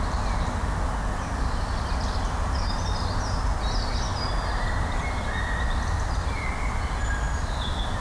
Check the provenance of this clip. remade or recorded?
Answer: recorded